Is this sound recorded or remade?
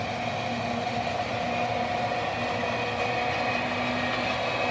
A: recorded